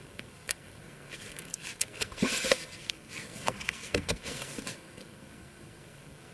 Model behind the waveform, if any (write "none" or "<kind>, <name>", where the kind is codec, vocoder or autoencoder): codec, SNAC